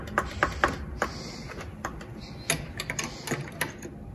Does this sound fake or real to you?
real